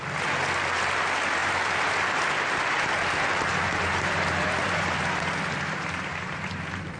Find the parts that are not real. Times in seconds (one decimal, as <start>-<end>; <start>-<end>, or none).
1.4-2.3; 3.5-7.0